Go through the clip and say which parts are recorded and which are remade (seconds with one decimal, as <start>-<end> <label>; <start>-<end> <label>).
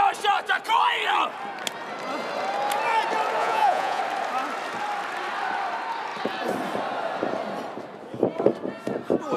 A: 0.0-3.4 recorded; 3.4-4.0 remade; 4.0-9.4 recorded